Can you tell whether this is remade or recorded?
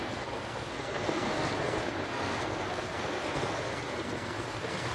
remade